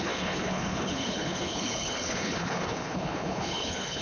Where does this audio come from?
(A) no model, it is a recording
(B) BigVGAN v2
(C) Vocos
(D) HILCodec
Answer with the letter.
D